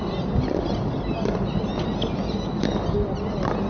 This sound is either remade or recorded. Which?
recorded